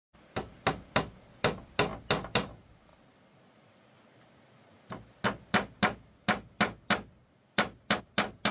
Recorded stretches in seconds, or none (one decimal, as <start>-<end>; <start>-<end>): 0.0-8.5